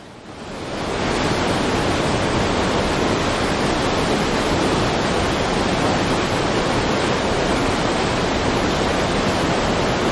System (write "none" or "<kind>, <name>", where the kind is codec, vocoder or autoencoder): none